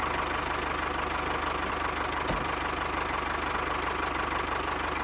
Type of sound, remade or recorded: recorded